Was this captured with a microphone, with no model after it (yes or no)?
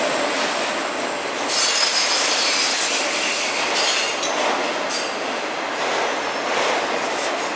yes